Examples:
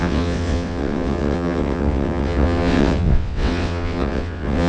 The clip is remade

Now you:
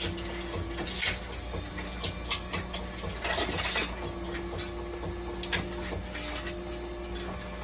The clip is recorded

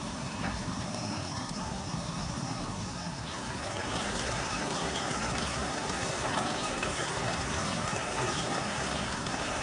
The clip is remade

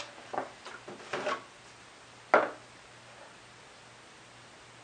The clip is recorded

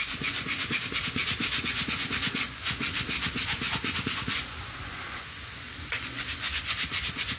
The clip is remade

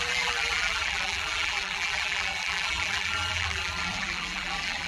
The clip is remade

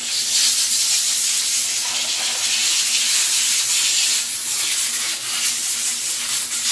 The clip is recorded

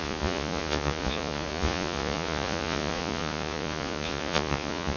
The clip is remade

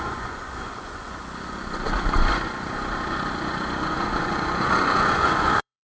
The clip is remade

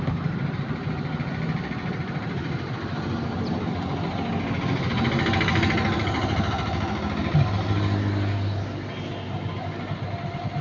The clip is recorded